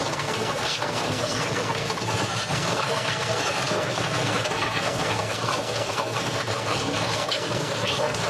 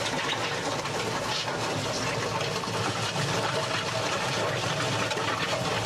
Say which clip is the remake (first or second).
first